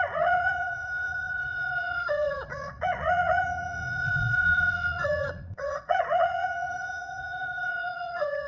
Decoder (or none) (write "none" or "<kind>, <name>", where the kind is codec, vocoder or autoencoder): vocoder, Vocos